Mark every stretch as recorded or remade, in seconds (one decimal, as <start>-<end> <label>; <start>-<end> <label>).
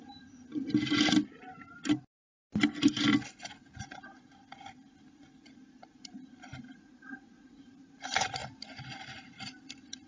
0.0-0.5 remade; 0.5-5.0 recorded; 5.0-6.5 remade; 6.5-7.0 recorded; 7.0-8.4 remade; 8.4-9.0 recorded; 9.0-10.1 remade